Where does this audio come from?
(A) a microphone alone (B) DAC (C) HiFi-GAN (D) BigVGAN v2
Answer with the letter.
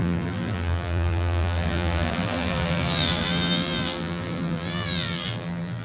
D